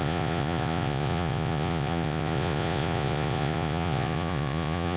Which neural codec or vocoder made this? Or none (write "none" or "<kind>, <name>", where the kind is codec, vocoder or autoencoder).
vocoder, Vocos